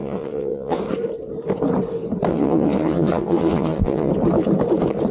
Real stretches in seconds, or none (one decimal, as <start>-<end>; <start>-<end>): 0.8-2.3; 4.1-5.1